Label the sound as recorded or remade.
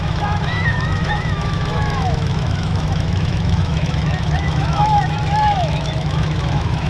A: remade